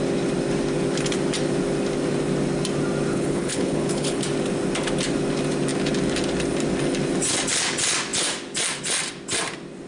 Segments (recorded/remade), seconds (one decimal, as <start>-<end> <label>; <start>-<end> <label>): 0.0-3.1 recorded; 3.1-4.2 remade; 4.2-9.9 recorded